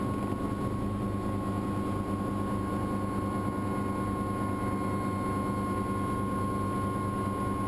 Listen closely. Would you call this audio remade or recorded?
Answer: recorded